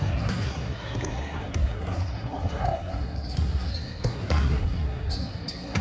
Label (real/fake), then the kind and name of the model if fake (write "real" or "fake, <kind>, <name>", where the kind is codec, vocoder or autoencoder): fake, codec, SNAC